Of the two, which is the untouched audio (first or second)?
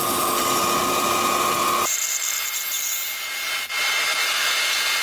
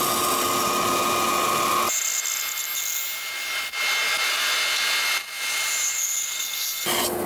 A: second